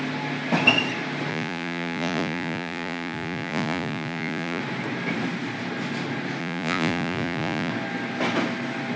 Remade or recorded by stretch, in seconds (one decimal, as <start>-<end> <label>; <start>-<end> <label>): 0.0-1.3 recorded; 1.3-4.6 remade; 4.6-6.4 recorded; 6.4-7.7 remade; 7.7-9.0 recorded